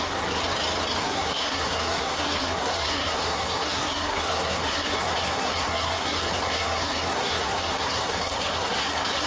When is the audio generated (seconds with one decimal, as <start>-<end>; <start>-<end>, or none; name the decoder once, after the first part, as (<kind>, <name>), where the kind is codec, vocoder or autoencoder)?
0.0-0.4 (codec, SNAC); 1.0-9.3